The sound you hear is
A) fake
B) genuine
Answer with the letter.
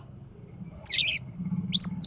B